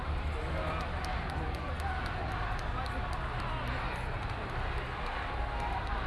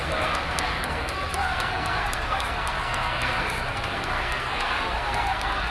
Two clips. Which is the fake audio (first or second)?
second